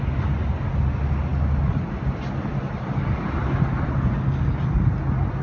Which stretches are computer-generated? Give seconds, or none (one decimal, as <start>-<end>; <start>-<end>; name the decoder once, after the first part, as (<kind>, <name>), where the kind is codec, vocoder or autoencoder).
none